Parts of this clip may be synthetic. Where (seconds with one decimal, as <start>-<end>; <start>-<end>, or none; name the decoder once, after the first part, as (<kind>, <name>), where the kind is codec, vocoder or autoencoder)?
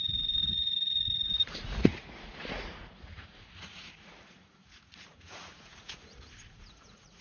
0.0-7.2 (vocoder, Vocos)